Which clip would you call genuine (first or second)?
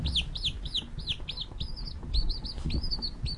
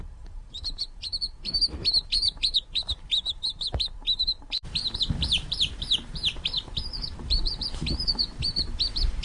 first